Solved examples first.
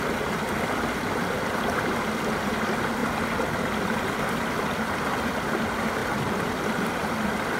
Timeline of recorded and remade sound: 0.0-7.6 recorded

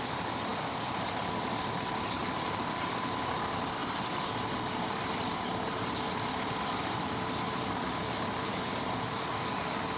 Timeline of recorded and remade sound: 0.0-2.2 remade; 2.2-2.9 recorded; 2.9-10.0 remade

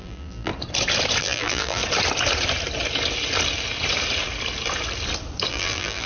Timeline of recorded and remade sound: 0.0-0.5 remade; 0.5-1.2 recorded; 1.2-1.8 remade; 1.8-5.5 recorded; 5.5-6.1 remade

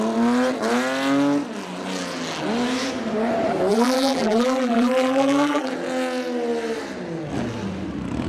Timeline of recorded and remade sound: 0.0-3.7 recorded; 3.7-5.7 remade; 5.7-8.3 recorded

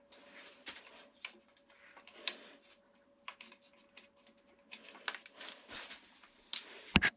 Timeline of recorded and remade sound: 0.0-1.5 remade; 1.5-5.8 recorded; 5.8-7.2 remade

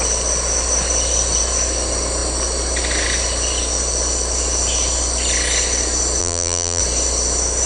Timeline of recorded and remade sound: 0.0-6.2 recorded; 6.2-6.8 remade; 6.8-7.7 recorded

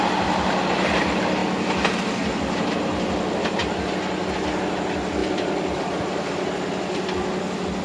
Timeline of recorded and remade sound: 0.0-5.2 recorded; 5.2-6.3 remade; 6.3-7.8 recorded